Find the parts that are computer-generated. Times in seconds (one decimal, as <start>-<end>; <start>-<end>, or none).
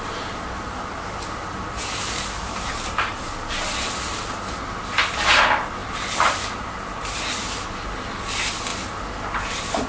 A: 5.8-6.9